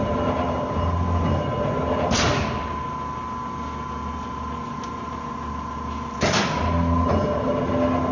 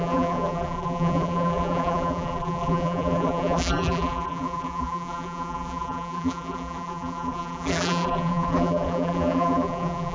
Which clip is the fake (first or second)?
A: second